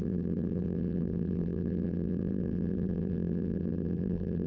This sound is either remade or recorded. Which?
remade